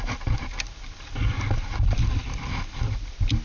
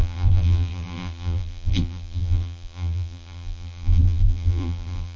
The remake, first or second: second